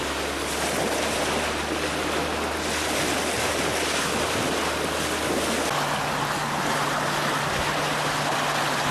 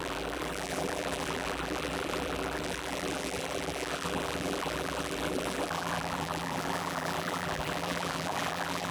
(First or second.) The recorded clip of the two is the first